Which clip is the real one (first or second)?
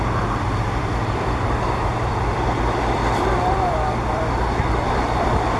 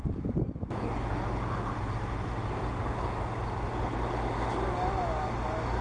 second